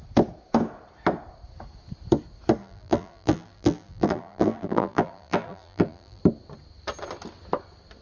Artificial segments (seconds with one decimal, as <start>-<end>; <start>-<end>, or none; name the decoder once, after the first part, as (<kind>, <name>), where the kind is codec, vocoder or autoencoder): 2.6-6.2 (vocoder, BigVGAN v2)